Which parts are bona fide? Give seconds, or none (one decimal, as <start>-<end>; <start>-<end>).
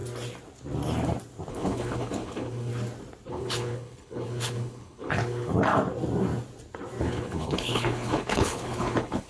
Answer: 0.0-1.5; 2.7-3.3; 5.7-7.0